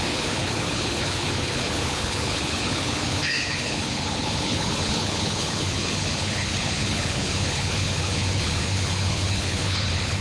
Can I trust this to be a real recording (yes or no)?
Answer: no